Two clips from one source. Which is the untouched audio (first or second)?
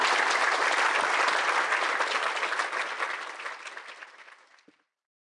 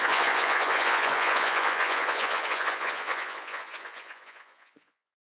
first